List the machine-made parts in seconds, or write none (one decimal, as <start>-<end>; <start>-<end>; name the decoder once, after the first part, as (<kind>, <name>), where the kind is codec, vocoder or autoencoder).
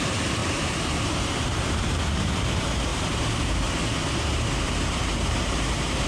0.0-6.1 (vocoder, BigVGAN v2)